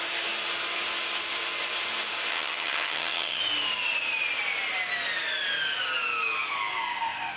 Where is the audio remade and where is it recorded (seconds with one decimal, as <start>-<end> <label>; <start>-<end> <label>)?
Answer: 0.0-2.3 recorded; 2.3-3.4 remade; 3.4-7.4 recorded

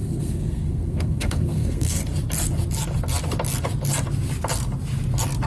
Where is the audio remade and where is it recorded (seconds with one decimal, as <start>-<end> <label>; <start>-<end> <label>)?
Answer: 0.0-2.0 remade; 2.0-5.5 recorded